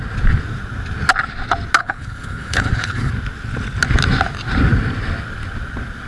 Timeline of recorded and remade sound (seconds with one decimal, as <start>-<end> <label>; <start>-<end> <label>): 0.0-1.8 recorded; 1.8-3.1 remade; 3.1-6.1 recorded